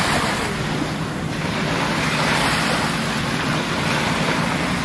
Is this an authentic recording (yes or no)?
yes